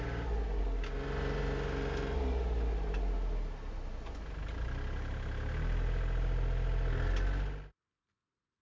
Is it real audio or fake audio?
real